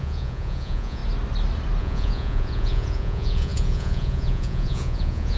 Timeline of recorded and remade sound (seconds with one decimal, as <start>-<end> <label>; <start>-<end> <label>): 0.0-1.0 remade; 1.0-1.8 recorded; 1.8-5.4 remade